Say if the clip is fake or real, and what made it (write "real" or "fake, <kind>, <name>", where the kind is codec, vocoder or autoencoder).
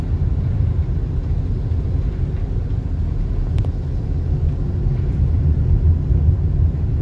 real